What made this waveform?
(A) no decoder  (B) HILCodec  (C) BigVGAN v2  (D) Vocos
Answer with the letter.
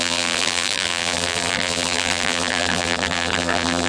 C